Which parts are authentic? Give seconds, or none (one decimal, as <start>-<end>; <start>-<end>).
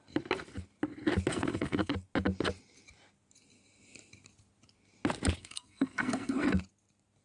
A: 0.0-1.3; 1.9-5.4; 6.6-7.2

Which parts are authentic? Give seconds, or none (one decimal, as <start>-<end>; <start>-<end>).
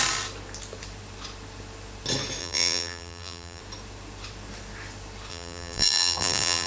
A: 0.0-2.4; 3.6-5.3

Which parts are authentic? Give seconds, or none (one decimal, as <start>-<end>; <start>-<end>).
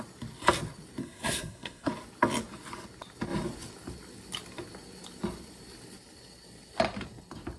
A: 0.0-1.0; 1.9-7.6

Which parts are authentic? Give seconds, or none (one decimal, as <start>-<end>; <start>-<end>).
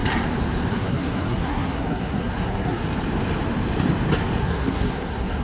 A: 0.0-0.7; 2.8-4.4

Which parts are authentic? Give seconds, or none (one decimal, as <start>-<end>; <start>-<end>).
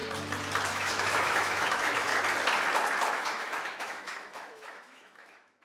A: 0.0-0.7; 2.1-3.1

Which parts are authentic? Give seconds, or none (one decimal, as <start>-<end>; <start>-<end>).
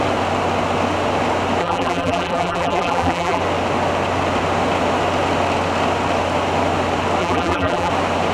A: 0.0-1.6; 3.4-7.2; 7.9-8.3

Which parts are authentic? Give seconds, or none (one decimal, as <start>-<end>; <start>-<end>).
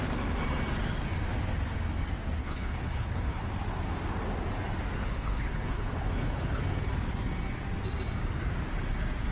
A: 0.0-2.4; 3.5-5.0; 6.6-9.3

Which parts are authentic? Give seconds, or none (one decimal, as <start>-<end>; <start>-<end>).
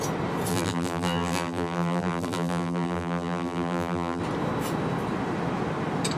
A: 0.0-0.5; 4.2-6.2